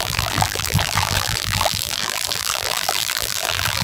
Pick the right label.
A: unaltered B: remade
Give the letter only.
B